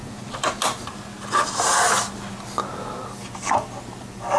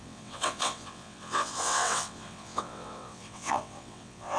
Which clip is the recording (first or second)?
first